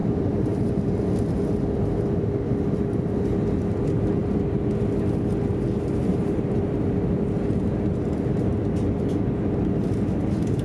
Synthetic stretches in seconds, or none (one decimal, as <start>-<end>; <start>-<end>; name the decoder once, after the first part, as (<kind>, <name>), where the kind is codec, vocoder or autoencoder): 0.0-1.0 (vocoder, BigVGAN v2); 6.1-6.7